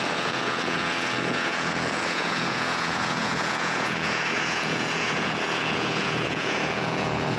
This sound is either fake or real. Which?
fake